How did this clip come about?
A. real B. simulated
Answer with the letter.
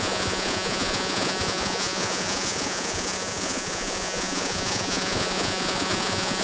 B